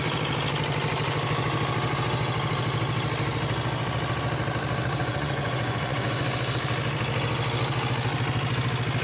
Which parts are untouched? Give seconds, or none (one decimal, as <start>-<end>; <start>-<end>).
0.0-5.0; 6.2-9.0